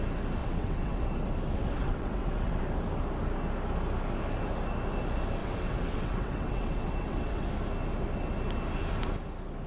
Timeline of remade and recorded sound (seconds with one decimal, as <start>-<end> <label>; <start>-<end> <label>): 0.0-0.4 recorded; 0.4-1.0 remade; 1.0-1.6 recorded; 1.6-2.6 remade; 2.6-5.4 recorded; 5.4-7.5 remade; 7.5-9.7 recorded